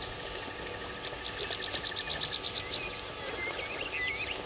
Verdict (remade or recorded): recorded